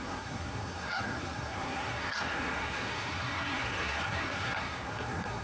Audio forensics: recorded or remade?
remade